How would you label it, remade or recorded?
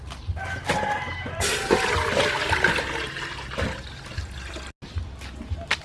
recorded